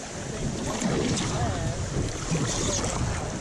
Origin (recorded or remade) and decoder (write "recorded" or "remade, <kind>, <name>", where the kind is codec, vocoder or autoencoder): recorded